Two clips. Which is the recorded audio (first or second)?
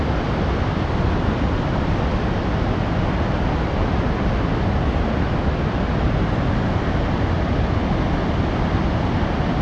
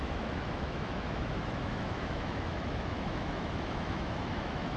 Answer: first